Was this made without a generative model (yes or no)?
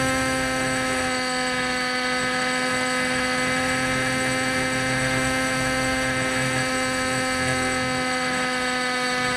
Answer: no